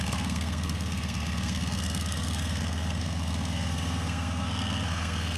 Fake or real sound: fake